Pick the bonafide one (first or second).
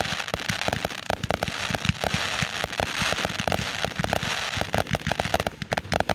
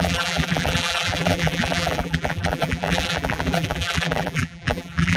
first